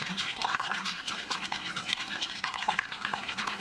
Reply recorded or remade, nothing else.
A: remade